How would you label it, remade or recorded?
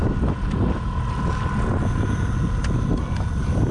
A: recorded